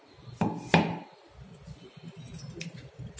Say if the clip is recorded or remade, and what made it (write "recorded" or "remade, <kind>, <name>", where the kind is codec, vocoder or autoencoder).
recorded